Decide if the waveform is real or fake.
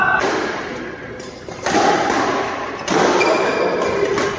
real